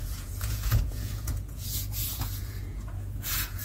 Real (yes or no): no